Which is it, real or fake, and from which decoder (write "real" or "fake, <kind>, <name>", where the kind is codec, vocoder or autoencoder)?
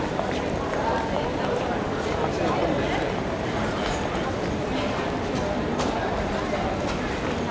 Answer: real